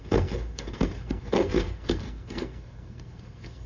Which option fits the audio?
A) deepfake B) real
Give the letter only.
A